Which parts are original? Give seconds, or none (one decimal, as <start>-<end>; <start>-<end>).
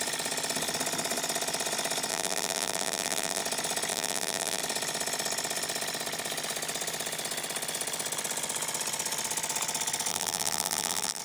0.0-2.1; 3.4-3.9; 4.6-10.1